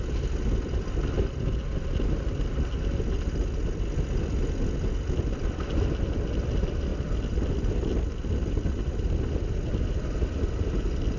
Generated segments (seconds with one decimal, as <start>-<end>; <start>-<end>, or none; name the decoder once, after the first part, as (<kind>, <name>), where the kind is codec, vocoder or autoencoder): none